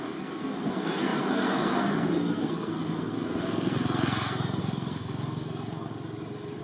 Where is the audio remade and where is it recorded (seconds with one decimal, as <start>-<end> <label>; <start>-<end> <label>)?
0.0-5.9 remade; 5.9-6.6 recorded